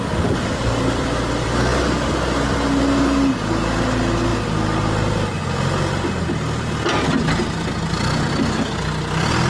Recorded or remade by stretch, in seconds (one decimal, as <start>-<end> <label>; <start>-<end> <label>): 0.0-9.5 recorded